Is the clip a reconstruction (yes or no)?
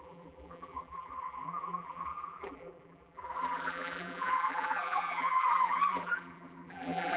yes